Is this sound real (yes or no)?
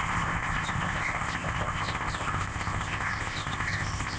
no